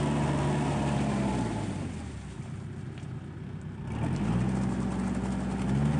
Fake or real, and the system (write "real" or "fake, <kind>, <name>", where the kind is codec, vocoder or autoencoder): real